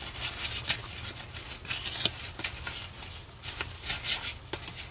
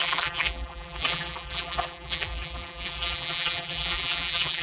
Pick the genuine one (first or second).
first